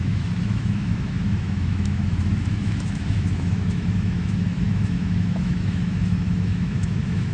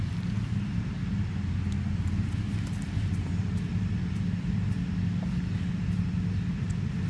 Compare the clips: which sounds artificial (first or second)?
first